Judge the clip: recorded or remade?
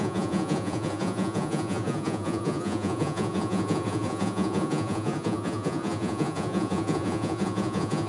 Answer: remade